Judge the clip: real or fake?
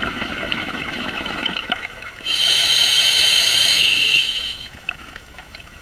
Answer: fake